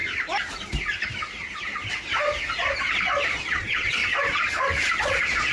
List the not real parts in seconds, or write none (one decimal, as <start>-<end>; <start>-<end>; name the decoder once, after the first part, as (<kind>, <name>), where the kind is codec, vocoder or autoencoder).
3.3-4.0 (vocoder, Vocos); 5.0-5.5